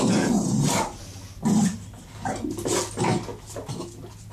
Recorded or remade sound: recorded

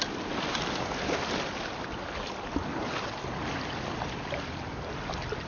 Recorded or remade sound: recorded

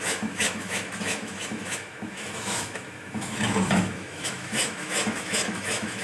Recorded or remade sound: remade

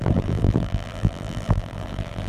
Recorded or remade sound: remade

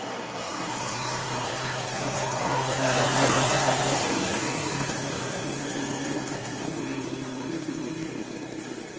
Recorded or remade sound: remade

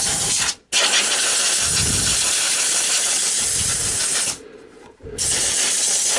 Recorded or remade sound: recorded